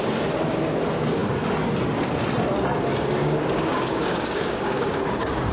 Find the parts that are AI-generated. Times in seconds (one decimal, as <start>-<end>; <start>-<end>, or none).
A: 3.2-5.5